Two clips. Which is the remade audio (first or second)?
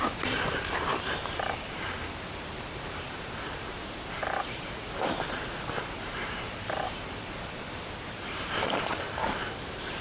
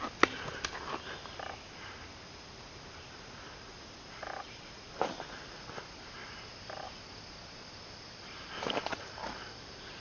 first